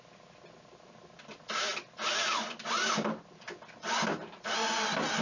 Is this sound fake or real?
real